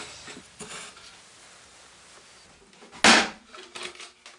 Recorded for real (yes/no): yes